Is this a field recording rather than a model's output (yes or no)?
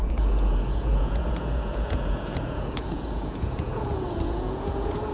no